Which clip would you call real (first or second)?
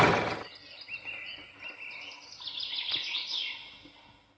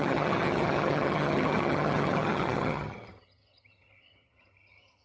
first